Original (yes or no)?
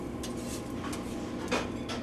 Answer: yes